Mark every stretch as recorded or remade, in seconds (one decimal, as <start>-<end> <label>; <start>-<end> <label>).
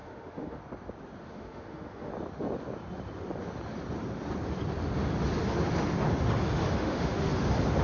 0.0-0.6 remade; 0.6-1.2 recorded; 1.2-2.1 remade; 2.1-6.6 recorded; 6.6-7.3 remade; 7.3-7.8 recorded